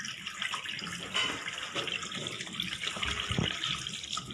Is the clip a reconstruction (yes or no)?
no